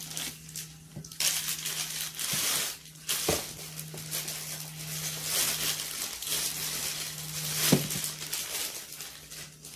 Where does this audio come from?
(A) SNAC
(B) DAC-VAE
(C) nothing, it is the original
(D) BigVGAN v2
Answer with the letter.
C